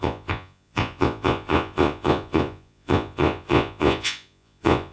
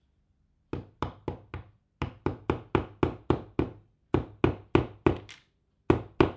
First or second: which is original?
second